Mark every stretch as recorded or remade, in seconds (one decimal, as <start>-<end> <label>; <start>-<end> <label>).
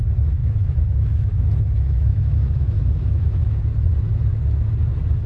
0.0-0.4 recorded; 0.4-3.6 remade; 3.6-5.3 recorded